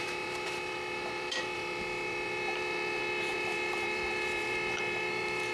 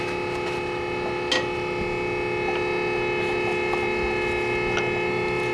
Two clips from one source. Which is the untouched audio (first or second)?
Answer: second